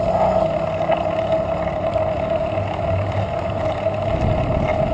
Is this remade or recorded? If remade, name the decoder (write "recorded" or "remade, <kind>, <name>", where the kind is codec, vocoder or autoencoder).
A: recorded